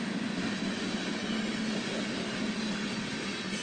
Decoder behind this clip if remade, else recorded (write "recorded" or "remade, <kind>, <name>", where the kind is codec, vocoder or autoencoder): recorded